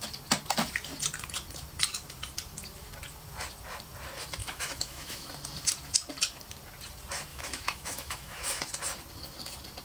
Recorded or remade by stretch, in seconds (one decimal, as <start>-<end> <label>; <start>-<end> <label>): 0.0-4.4 recorded; 4.4-5.3 remade; 5.3-7.3 recorded; 7.3-8.6 remade; 8.6-9.8 recorded

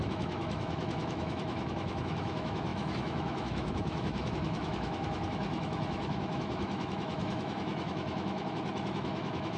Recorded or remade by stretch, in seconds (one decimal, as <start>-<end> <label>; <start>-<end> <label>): 0.0-9.6 remade

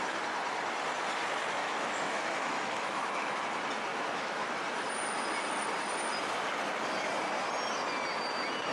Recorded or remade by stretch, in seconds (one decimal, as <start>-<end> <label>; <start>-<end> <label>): 0.0-1.6 recorded; 1.6-3.4 remade; 3.4-3.9 recorded; 3.9-4.6 remade; 4.6-8.7 recorded